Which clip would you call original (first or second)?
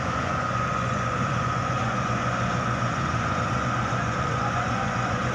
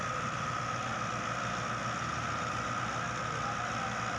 second